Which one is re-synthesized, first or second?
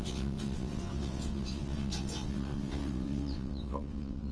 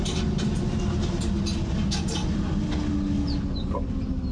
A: first